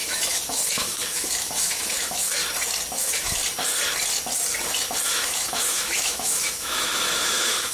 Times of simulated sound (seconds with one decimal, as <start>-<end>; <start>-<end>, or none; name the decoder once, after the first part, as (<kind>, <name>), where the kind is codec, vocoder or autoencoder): 0.0-2.4 (autoencoder, DAC-VAE); 3.0-3.4; 5.1-7.7